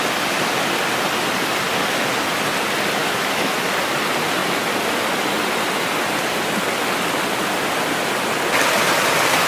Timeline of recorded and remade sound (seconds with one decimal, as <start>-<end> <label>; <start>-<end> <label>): 0.0-3.0 recorded; 3.0-3.6 remade; 3.6-9.5 recorded